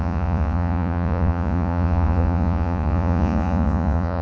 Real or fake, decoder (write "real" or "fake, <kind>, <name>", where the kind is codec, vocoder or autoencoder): fake, vocoder, Vocos